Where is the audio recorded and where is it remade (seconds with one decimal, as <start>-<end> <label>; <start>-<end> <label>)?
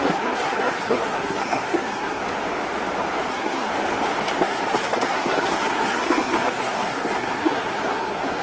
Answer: 0.0-2.2 remade; 2.2-3.3 recorded; 3.3-3.7 remade; 3.7-4.4 recorded; 4.4-8.4 remade